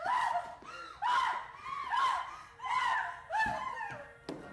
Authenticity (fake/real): real